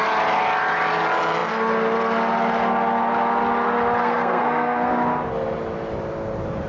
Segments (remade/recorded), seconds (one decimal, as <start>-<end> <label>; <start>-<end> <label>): 0.0-4.0 recorded; 4.0-4.9 remade; 4.9-6.7 recorded